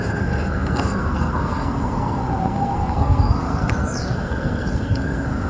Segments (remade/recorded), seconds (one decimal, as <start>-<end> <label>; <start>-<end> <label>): 0.0-5.5 remade